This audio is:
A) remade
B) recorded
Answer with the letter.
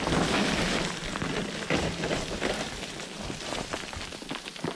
B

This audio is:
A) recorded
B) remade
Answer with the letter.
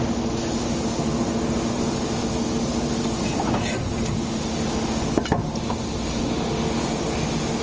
A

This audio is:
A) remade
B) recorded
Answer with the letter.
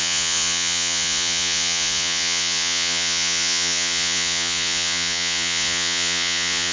A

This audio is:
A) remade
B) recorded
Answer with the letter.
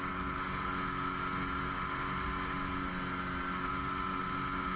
B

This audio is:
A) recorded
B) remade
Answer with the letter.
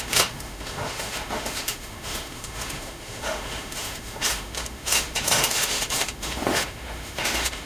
B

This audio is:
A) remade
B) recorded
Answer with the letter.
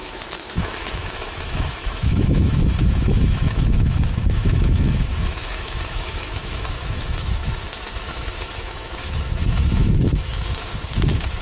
A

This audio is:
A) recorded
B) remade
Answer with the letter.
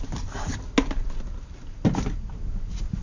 A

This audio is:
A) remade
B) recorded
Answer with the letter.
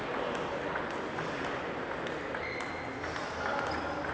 B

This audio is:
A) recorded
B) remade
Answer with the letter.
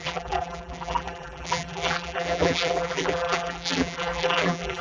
B